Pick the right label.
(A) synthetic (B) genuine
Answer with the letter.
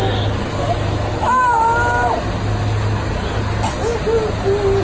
B